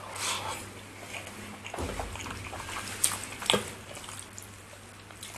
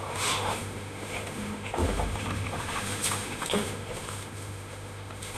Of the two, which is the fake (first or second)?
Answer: second